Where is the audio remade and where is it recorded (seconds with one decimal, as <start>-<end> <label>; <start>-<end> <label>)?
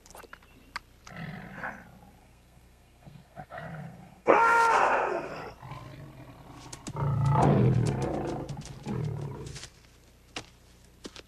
0.0-2.2 recorded; 2.2-5.3 remade; 5.3-11.3 recorded